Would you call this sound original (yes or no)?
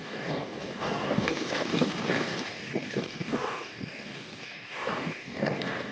no